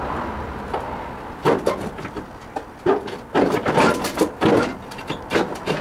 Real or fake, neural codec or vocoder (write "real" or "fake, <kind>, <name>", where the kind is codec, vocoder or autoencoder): real